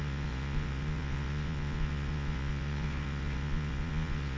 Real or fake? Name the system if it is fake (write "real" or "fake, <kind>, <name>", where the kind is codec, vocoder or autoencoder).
fake, vocoder, Vocos